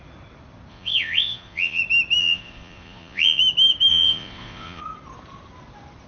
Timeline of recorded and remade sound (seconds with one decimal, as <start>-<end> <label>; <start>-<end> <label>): 0.0-0.7 recorded; 0.7-1.8 remade; 1.8-2.2 recorded; 2.2-3.4 remade; 3.4-3.9 recorded; 3.9-4.8 remade; 4.8-6.1 recorded